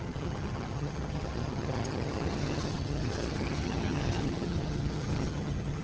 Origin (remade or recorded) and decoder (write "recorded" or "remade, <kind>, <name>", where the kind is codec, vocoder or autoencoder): remade, vocoder, HiFi-GAN